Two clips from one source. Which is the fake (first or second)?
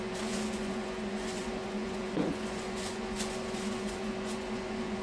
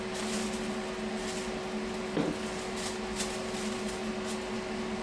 first